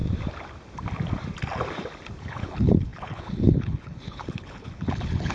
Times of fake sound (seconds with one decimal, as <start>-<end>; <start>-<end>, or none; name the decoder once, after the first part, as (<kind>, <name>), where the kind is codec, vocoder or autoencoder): 2.2-5.3 (codec, HILCodec)